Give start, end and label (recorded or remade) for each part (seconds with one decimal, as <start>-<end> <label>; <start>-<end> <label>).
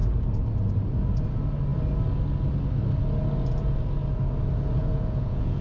0.0-4.8 recorded; 4.8-5.6 remade